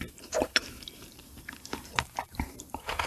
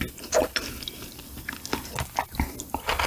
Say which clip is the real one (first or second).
second